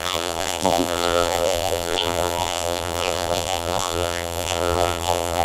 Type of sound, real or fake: fake